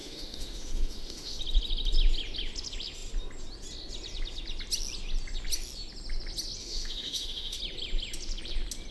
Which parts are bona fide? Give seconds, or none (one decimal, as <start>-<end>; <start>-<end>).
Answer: 1.4-6.6; 7.6-8.9